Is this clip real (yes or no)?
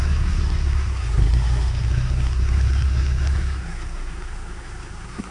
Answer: no